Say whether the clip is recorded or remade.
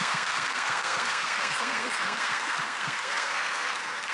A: remade